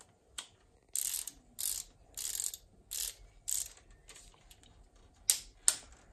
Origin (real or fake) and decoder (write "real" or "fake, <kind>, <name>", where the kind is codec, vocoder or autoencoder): real